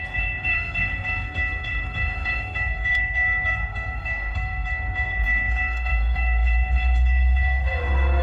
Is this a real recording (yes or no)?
no